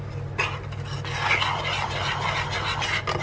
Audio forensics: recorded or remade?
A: recorded